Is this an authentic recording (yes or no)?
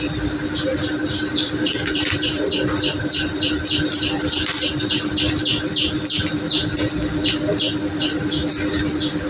yes